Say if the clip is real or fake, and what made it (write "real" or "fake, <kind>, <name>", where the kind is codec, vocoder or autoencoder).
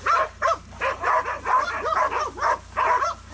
real